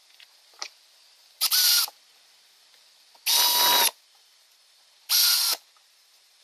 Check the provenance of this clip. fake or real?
real